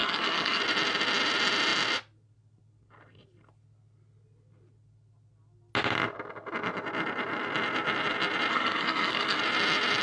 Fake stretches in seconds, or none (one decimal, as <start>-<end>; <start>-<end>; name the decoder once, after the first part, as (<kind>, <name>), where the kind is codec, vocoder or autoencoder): 0.0-0.6 (codec, SNAC); 8.5-9.4